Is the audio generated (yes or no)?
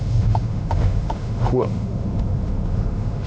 yes